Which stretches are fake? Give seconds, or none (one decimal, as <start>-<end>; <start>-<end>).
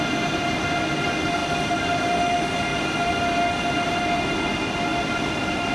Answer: none